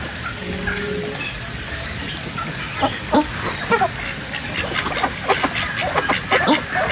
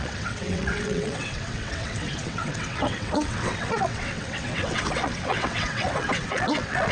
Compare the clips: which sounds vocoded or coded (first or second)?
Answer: second